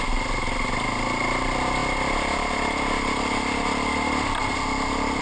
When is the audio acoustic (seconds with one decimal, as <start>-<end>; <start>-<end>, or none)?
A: 0.0-5.2